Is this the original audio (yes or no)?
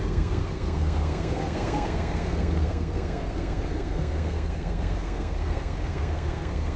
no